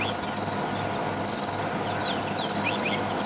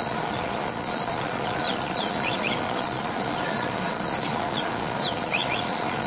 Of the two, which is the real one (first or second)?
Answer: first